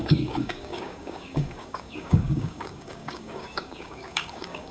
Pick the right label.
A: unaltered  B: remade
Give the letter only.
B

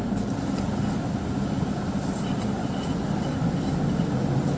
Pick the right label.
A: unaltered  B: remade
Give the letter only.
A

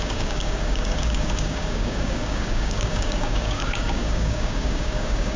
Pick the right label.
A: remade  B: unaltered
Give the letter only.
A